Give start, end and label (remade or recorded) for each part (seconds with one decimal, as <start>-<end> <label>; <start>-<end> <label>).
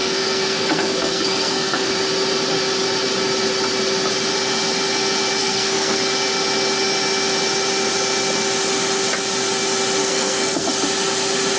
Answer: 0.0-1.9 remade; 1.9-5.4 recorded; 5.4-6.0 remade; 6.0-10.0 recorded; 10.0-10.7 remade; 10.7-11.6 recorded